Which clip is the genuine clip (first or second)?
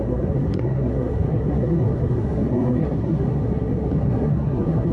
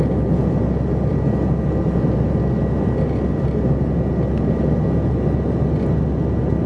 second